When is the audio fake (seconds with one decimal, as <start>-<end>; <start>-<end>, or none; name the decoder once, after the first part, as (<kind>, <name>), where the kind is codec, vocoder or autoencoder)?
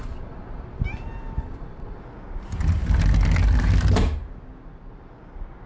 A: 0.0-0.8 (vocoder, Vocos); 1.4-2.0